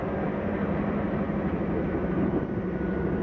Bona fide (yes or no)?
yes